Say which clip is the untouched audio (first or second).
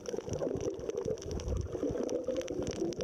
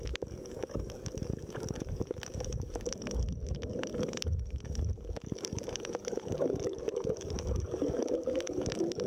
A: first